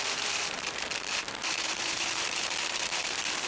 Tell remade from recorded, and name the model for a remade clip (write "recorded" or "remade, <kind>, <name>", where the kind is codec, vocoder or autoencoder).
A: remade, vocoder, BigVGAN v2